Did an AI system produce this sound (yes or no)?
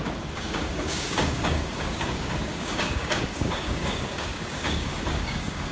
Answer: yes